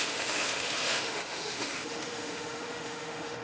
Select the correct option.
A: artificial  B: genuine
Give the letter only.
A